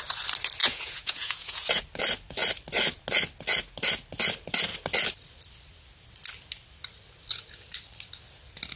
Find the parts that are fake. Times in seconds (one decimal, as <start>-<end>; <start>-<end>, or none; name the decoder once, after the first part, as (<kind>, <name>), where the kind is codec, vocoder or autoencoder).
0.6-1.8 (vocoder, Vocos)

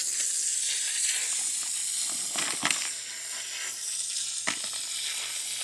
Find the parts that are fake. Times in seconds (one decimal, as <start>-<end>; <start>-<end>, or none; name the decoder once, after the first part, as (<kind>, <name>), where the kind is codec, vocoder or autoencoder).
0.5-1.0 (vocoder, BigVGAN v2)

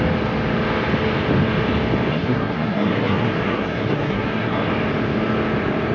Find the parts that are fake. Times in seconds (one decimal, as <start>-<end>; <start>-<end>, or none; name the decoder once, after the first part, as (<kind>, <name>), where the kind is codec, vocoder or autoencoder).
2.1-4.7 (codec, SNAC)